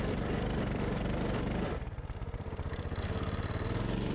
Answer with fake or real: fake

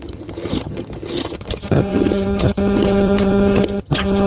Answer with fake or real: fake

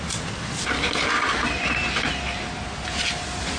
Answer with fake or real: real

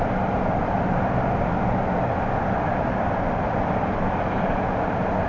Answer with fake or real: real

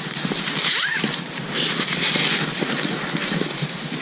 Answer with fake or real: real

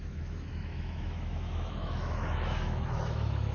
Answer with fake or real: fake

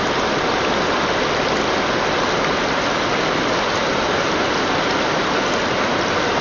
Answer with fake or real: real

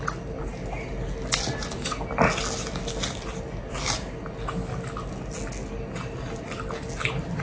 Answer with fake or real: real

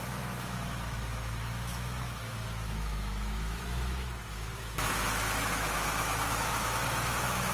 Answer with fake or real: fake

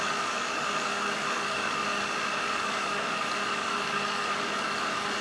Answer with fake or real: fake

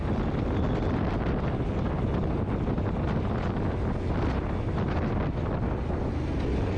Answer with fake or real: real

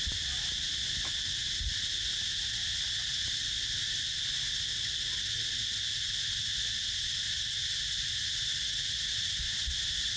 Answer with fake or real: real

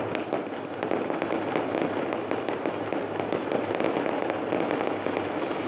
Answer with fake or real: real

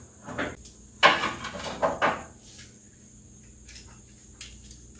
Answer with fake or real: real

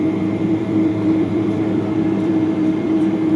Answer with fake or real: fake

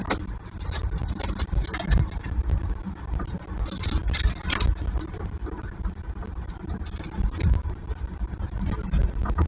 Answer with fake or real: real